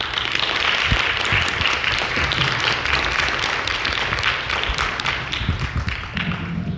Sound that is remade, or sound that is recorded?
recorded